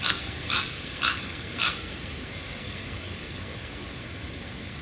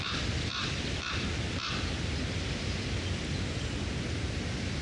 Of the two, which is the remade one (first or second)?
first